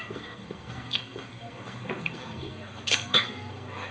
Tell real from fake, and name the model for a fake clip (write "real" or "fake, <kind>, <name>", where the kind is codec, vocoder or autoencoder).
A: fake, codec, SNAC